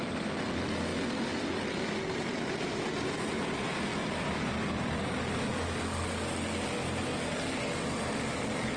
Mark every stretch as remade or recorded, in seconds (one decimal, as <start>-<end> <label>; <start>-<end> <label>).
0.0-3.9 remade; 3.9-8.4 recorded; 8.4-8.8 remade